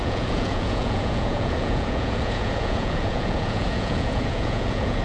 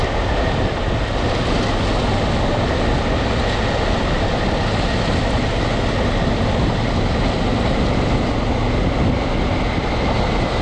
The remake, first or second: first